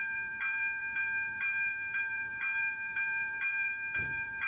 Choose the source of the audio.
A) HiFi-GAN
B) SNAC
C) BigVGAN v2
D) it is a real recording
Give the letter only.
C